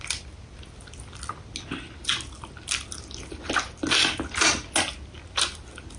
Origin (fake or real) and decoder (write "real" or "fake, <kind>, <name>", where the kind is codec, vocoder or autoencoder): real